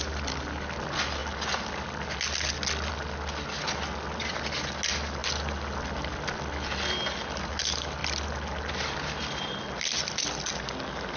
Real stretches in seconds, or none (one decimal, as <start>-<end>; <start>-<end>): 0.0-11.2